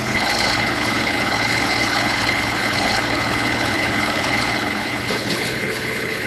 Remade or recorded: remade